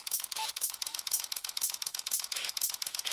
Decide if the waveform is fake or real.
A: fake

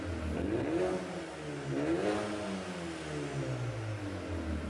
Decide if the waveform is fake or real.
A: real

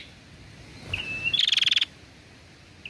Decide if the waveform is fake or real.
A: real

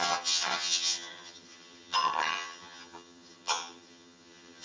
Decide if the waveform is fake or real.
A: fake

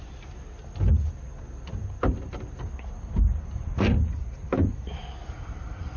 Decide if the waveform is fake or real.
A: real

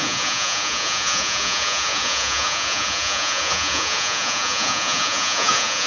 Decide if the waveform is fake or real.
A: fake